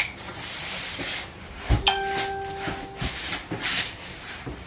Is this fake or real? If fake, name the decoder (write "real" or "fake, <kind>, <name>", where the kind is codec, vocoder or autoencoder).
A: real